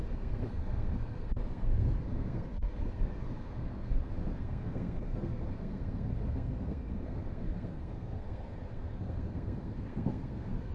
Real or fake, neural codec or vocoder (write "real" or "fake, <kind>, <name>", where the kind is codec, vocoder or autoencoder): fake, codec, SNAC